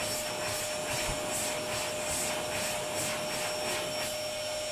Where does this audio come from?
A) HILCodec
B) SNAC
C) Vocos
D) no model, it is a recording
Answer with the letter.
D